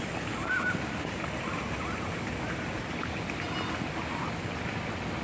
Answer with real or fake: real